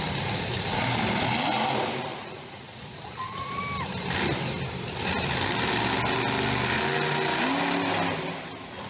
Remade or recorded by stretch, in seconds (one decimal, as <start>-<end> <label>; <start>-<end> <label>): 0.0-2.1 recorded; 2.1-3.6 remade; 3.6-8.9 recorded